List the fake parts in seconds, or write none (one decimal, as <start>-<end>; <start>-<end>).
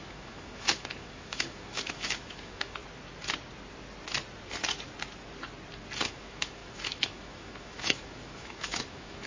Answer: 0.0-2.8; 6.1-9.3